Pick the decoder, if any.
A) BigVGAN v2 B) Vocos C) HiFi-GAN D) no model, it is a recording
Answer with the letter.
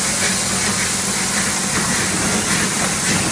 D